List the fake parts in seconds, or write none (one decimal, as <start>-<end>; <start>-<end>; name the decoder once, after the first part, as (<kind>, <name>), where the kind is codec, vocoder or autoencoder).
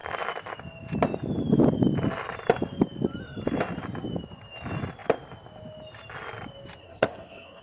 6.8-7.6 (codec, SNAC)